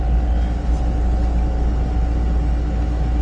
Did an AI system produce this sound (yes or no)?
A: no